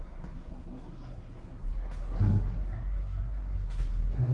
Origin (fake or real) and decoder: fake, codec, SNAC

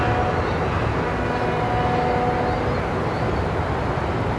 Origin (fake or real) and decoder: real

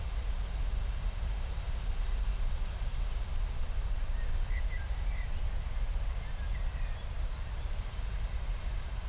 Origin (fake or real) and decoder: real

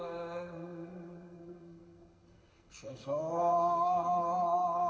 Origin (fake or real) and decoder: fake, codec, SNAC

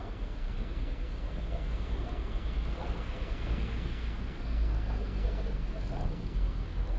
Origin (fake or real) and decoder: fake, codec, SNAC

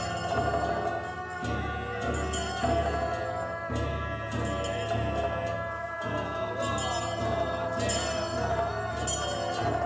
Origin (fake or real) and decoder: real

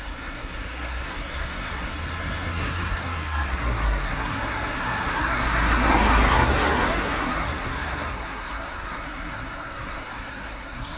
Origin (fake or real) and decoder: fake, codec, SNAC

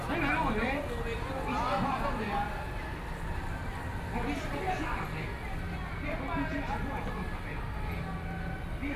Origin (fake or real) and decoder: real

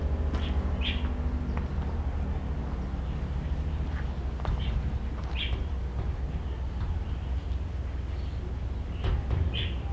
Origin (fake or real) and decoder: real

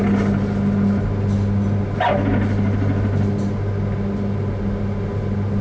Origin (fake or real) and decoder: real